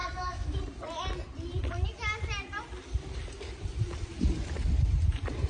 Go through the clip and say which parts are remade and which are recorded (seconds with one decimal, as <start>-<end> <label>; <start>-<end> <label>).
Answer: 0.0-0.6 remade; 0.6-5.5 recorded